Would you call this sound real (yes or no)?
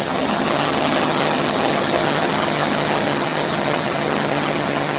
no